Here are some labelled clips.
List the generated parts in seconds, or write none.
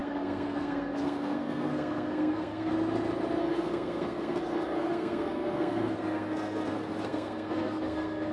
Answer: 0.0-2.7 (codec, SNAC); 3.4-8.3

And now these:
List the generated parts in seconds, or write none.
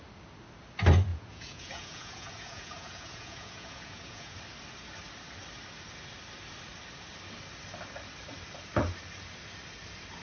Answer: 1.1-4.4 (vocoder, Vocos)